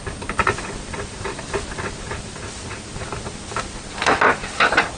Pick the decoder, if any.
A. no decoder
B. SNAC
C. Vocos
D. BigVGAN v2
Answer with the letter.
A